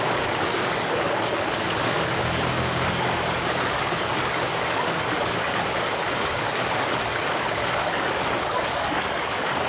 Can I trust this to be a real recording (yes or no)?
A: no